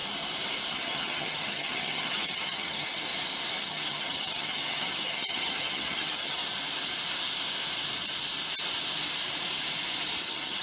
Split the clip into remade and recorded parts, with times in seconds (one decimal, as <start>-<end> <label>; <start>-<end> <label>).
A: 0.0-0.7 recorded; 0.7-3.1 remade; 3.1-3.6 recorded; 3.6-6.4 remade; 6.4-10.2 recorded; 10.2-10.6 remade